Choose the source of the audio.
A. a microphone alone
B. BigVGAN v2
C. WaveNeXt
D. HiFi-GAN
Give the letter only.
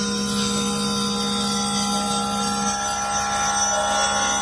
A